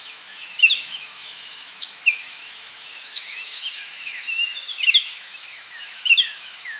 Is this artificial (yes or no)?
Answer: yes